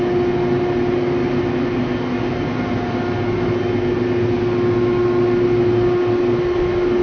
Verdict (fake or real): real